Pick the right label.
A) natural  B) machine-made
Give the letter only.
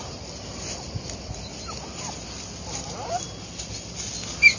A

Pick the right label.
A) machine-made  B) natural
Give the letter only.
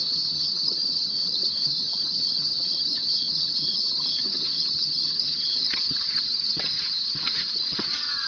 A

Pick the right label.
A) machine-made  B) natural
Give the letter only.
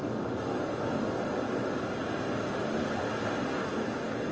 B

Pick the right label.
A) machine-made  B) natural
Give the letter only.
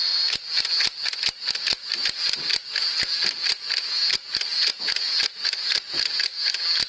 B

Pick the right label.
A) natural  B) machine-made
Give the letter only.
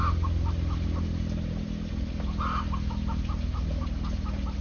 A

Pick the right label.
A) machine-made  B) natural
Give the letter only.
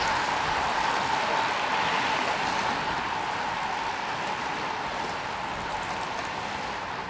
B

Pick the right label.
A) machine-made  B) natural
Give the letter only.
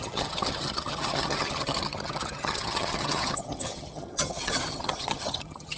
A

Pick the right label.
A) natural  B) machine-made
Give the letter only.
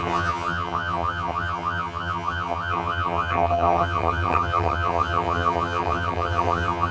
B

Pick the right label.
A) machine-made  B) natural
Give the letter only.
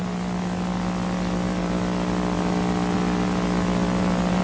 B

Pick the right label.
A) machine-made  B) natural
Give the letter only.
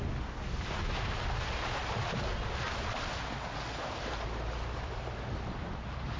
B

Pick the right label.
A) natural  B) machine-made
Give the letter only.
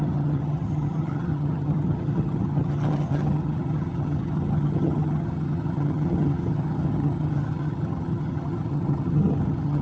B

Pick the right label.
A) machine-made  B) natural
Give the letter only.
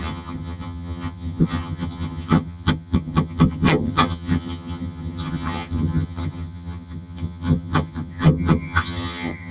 A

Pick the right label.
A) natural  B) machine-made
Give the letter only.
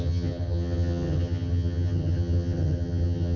B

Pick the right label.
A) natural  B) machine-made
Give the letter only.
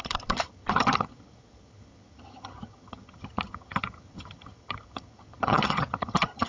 B